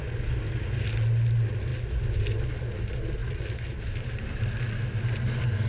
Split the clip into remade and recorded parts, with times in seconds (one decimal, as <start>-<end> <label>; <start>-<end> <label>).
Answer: 0.0-5.7 recorded